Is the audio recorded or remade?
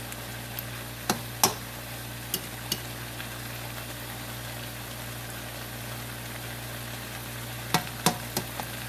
recorded